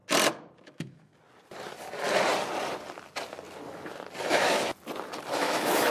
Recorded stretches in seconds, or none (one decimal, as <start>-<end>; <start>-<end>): 0.0-0.6; 1.1-4.2; 4.7-5.3